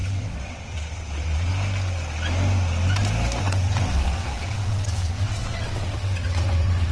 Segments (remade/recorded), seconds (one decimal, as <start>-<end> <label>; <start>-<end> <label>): 0.0-1.5 remade; 1.5-3.4 recorded; 3.4-6.9 remade